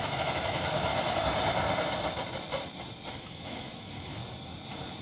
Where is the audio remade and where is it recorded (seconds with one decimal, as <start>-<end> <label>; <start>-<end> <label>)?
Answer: 0.0-0.9 remade; 0.9-3.1 recorded; 3.1-4.2 remade; 4.2-5.0 recorded

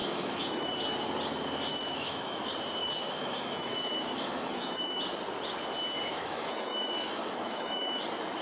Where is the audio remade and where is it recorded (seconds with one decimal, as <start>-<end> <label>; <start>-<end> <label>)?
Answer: 0.0-0.7 remade; 0.7-1.7 recorded; 1.7-2.4 remade; 2.4-2.8 recorded; 2.8-5.0 remade; 5.0-6.1 recorded; 6.1-8.0 remade; 8.0-8.4 recorded

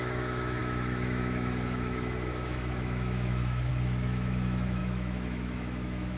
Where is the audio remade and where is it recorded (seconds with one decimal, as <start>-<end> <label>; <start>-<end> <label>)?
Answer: 0.0-6.2 remade

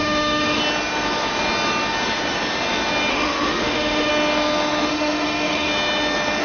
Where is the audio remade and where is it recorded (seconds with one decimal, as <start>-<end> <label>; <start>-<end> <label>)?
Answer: 0.0-0.6 remade; 0.6-3.1 recorded; 3.1-4.1 remade; 4.1-4.9 recorded; 4.9-5.7 remade; 5.7-6.4 recorded